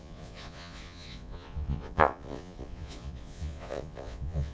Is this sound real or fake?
fake